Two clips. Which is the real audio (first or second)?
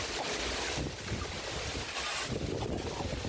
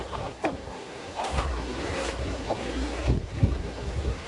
first